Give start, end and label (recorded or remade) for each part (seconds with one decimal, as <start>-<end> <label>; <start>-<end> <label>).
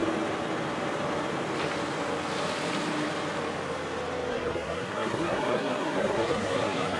0.0-4.3 recorded; 4.3-7.0 remade